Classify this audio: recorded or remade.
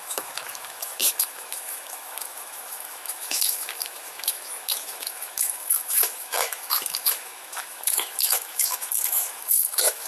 remade